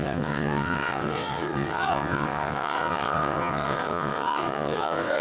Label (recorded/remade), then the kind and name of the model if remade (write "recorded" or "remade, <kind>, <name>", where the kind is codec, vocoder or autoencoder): remade, vocoder, WaveNeXt